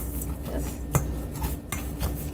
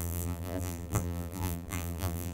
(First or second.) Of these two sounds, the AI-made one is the second